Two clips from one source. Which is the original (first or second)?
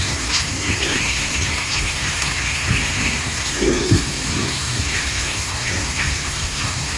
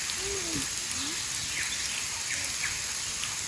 second